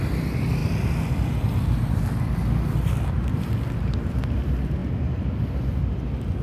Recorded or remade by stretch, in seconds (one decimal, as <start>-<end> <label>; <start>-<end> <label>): 0.0-6.4 recorded